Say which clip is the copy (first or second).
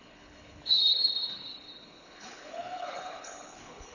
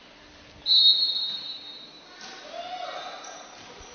first